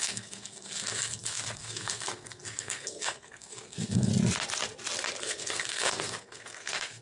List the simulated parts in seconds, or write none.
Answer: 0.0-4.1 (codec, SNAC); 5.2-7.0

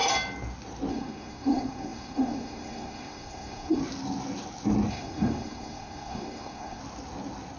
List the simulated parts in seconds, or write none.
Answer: 0.9-3.8 (codec, SNAC); 4.9-6.8

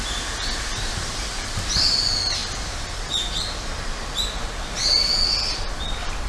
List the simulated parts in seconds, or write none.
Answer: none

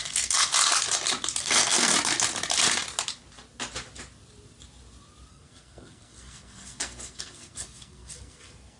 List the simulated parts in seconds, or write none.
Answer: 0.0-0.5 (codec, SNAC); 1.4-1.9; 5.3-8.8

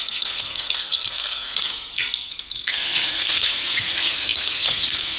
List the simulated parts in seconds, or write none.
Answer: 0.0-5.2 (codec, SNAC)

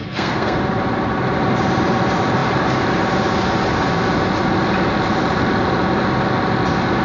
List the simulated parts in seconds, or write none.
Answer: 0.0-0.6 (codec, SNAC)

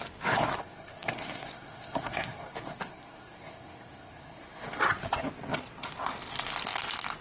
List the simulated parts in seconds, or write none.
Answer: 0.5-4.8 (codec, SNAC)